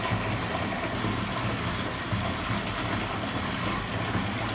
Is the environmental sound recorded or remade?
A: recorded